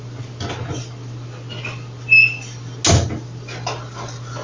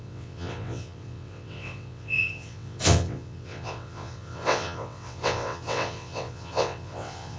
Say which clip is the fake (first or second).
second